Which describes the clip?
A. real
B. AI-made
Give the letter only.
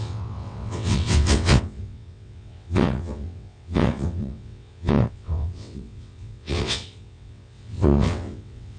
B